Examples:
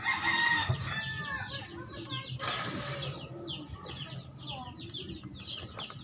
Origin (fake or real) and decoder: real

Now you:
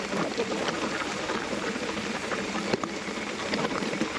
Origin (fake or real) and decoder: real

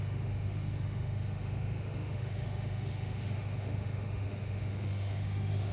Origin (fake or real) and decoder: fake, autoencoder, DAC-VAE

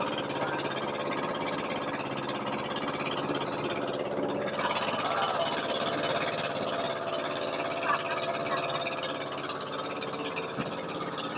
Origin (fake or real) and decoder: real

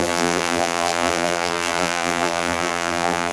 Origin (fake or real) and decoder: fake, vocoder, BigVGAN v2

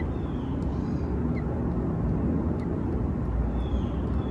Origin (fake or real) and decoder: real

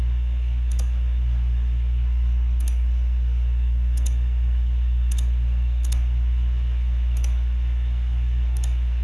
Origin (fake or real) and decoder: fake, codec, SNAC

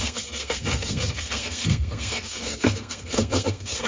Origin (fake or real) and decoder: fake, codec, SNAC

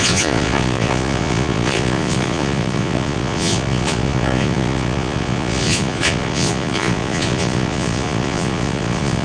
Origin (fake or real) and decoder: fake, vocoder, Vocos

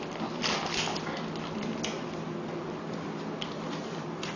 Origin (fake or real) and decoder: real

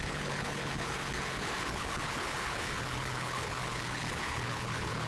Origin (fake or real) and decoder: fake, codec, HILCodec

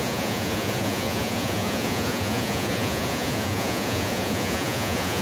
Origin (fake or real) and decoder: fake, vocoder, Vocos